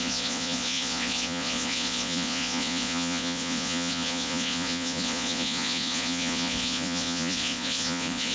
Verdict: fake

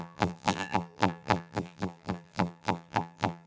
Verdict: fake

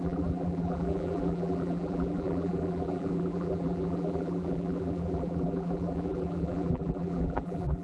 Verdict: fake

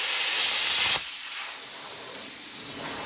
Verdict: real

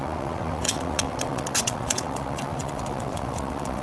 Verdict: fake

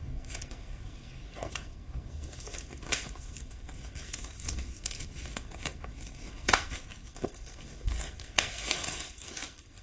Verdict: fake